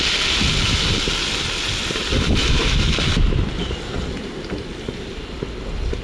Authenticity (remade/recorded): recorded